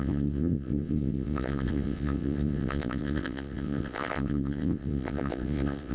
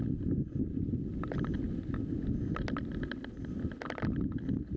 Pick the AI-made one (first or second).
first